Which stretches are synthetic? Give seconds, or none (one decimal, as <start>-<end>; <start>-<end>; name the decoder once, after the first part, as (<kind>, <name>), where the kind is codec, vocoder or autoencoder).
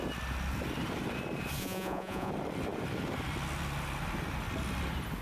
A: 1.6-2.3 (vocoder, Vocos)